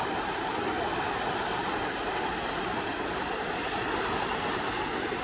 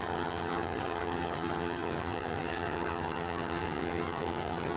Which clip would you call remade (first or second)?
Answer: second